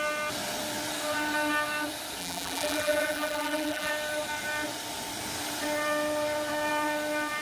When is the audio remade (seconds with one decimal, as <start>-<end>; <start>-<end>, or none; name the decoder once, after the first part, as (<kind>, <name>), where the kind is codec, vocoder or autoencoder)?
2.2-3.9 (vocoder, BigVGAN v2)